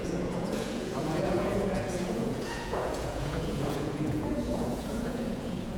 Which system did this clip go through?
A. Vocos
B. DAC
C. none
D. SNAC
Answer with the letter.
A